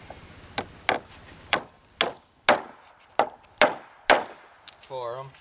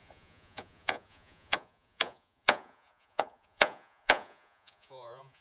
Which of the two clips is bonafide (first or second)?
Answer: first